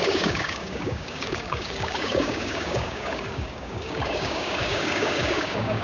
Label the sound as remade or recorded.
remade